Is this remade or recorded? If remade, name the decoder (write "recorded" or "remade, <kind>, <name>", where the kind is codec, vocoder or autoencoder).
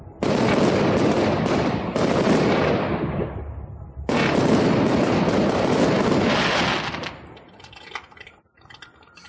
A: recorded